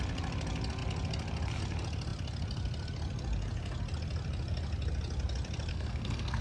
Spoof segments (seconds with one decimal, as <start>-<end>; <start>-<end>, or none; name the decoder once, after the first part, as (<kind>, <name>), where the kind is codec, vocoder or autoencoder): 5.7-6.4 (codec, SNAC)